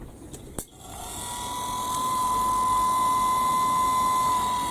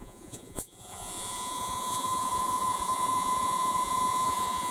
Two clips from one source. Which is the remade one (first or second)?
second